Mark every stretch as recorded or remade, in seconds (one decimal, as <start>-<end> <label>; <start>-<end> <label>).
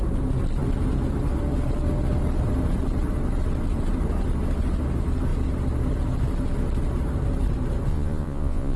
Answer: 0.0-7.9 recorded; 7.9-8.8 remade